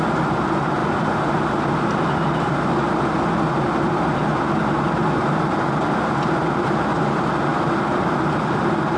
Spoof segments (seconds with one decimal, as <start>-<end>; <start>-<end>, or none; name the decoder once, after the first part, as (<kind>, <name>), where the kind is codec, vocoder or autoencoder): none